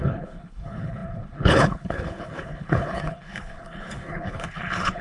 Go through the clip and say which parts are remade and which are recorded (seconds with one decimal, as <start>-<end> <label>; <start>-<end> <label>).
0.0-5.0 remade